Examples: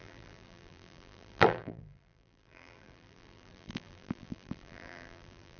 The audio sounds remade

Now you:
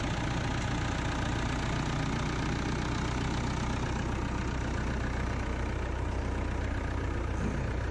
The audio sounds recorded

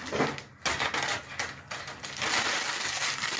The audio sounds recorded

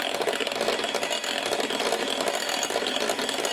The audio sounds recorded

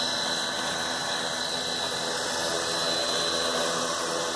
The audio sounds recorded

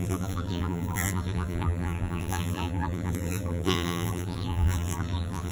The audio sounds remade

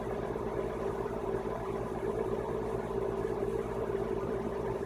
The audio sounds remade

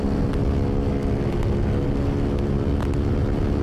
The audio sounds recorded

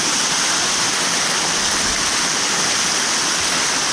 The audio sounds remade